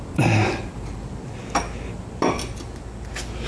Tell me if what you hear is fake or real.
real